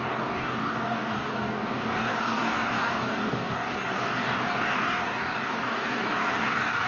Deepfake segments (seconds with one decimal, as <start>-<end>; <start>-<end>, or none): 0.0-6.9